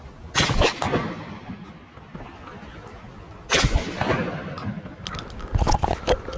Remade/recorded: recorded